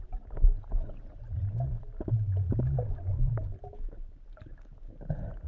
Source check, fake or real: real